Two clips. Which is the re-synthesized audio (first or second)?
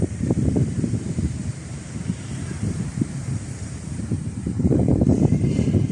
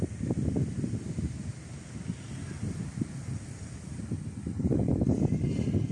first